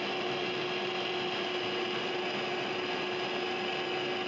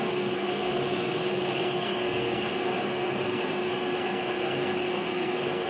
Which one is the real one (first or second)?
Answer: first